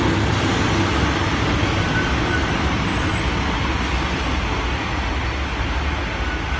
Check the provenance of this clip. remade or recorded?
recorded